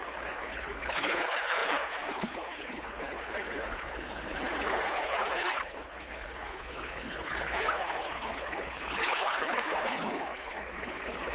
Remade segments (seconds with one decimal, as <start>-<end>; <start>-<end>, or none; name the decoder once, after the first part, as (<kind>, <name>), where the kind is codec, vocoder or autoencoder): 0.0-11.3 (codec, HILCodec)